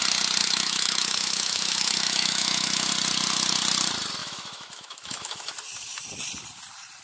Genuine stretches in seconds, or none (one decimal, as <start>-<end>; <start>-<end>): 0.0-0.4; 2.9-4.2; 5.5-7.0